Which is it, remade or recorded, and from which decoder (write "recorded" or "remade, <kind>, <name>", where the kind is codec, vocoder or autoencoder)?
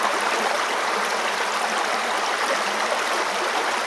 recorded